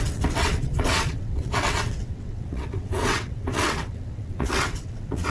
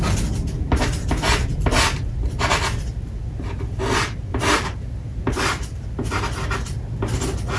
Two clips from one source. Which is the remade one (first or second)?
first